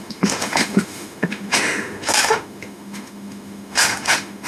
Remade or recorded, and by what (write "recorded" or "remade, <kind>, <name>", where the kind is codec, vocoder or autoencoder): remade, autoencoder, DAC-VAE